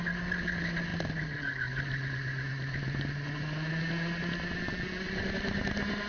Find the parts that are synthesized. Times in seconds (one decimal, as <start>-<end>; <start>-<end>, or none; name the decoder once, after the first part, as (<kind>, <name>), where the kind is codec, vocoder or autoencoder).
none